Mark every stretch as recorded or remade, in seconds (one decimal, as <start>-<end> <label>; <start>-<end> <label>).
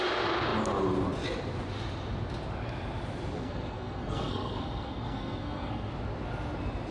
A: 0.0-3.4 recorded; 3.4-5.9 remade; 5.9-6.9 recorded